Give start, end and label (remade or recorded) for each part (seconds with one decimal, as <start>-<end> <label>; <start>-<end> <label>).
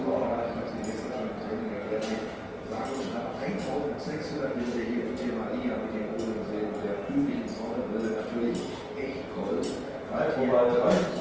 0.0-11.2 recorded